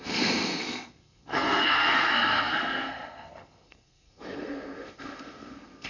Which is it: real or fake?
fake